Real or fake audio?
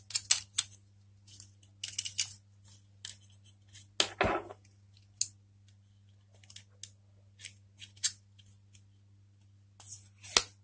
real